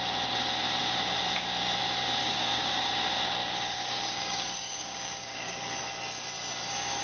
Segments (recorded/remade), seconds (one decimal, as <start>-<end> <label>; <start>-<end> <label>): 0.0-2.2 recorded; 2.2-2.9 remade; 2.9-3.4 recorded; 3.4-5.7 remade; 5.7-7.0 recorded